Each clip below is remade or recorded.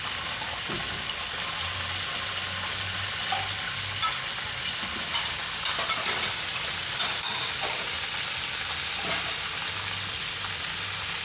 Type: recorded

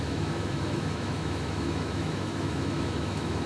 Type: remade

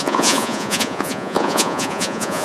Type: remade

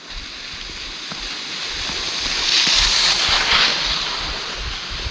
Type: recorded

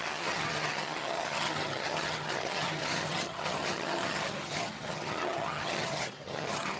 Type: remade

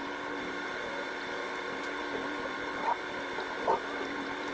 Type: recorded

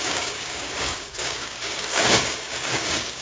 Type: remade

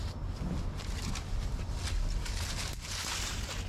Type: recorded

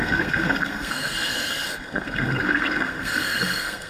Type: remade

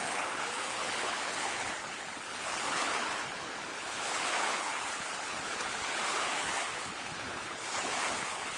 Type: remade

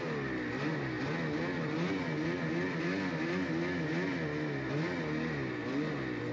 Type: recorded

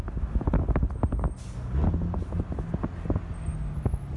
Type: recorded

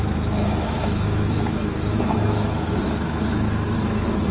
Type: remade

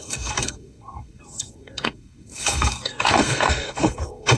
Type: remade